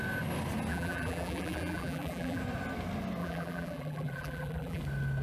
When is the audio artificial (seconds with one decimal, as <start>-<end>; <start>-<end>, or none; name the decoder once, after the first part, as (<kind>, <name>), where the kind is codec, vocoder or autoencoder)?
0.7-2.4 (vocoder, BigVGAN v2); 3.2-4.8